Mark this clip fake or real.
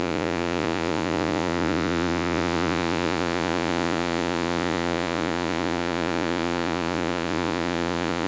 fake